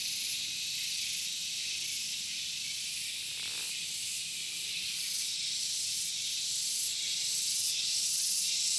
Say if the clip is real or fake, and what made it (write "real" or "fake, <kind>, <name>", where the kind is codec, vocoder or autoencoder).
real